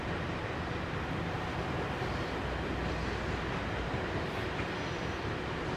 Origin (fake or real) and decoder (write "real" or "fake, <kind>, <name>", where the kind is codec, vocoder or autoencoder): real